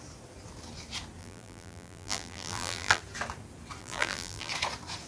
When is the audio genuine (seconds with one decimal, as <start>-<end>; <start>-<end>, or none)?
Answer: 0.0-1.2; 3.0-3.8; 4.5-5.1